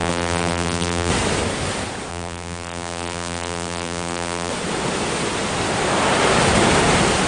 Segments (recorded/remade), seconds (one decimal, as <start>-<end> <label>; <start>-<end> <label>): 0.0-1.1 remade; 1.1-2.1 recorded; 2.1-4.5 remade; 4.5-7.3 recorded